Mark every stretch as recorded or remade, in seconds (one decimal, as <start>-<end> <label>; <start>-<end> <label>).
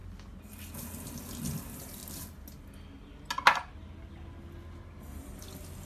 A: 0.0-5.9 recorded